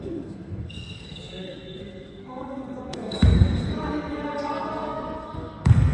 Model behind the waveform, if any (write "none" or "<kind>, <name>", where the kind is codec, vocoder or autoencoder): codec, SNAC